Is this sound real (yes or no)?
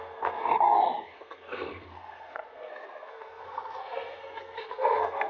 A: no